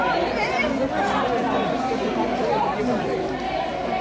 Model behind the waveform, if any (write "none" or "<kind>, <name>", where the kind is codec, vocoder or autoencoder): none